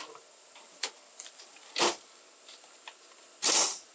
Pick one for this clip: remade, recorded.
recorded